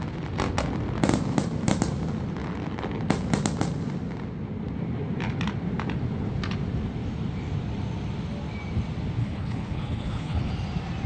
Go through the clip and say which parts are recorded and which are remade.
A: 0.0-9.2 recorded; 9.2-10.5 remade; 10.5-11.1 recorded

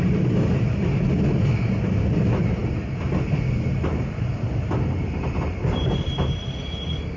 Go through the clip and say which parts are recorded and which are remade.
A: 0.0-7.2 recorded

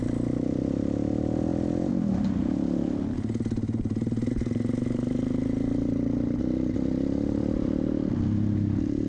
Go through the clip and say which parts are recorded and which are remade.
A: 0.0-9.1 recorded

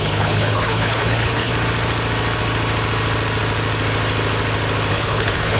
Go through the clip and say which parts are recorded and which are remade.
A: 0.0-1.5 remade; 1.5-4.9 recorded; 4.9-5.6 remade

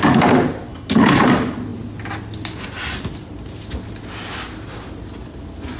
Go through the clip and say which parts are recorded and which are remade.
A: 0.0-0.7 recorded; 0.7-1.2 remade; 1.2-5.8 recorded

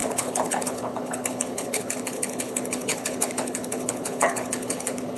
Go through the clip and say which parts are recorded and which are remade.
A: 0.0-5.2 remade

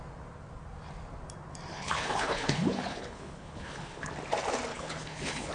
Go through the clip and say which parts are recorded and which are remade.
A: 0.0-1.7 recorded; 1.7-4.1 remade; 4.1-4.7 recorded; 4.7-5.5 remade